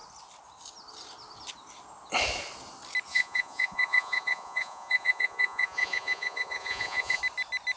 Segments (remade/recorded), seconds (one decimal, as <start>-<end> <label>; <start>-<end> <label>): 0.0-3.1 recorded; 3.1-7.2 remade; 7.2-7.8 recorded

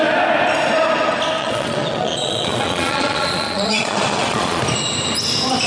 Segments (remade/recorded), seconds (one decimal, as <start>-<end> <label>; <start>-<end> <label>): 0.0-1.4 recorded; 1.4-4.6 remade; 4.6-5.7 recorded

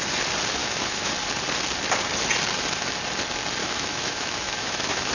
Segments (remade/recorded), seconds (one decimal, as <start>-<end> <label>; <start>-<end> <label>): 0.0-0.6 recorded; 0.6-1.1 remade; 1.1-3.6 recorded; 3.6-5.1 remade

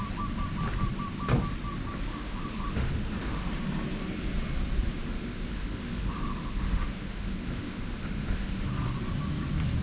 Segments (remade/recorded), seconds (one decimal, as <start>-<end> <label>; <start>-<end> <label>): 0.0-2.1 recorded; 2.1-3.6 remade; 3.6-4.9 recorded; 4.9-8.7 remade; 8.7-9.8 recorded

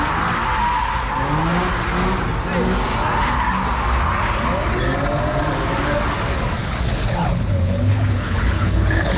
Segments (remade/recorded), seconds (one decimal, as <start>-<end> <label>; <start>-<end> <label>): 0.0-6.6 recorded; 6.6-9.2 remade

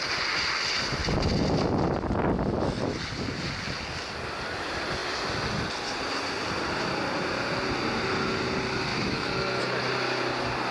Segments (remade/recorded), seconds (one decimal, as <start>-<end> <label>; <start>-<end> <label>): 0.0-8.9 recorded; 8.9-9.6 remade; 9.6-10.7 recorded

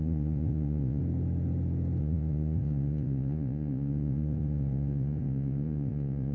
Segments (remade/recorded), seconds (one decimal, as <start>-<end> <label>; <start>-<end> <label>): 0.0-1.0 remade; 1.0-2.0 recorded; 2.0-6.3 remade

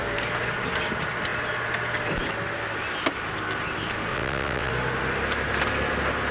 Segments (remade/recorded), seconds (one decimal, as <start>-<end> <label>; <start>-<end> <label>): 0.0-4.1 recorded; 4.1-4.7 remade; 4.7-6.3 recorded